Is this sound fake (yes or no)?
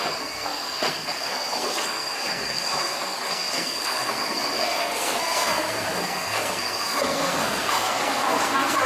yes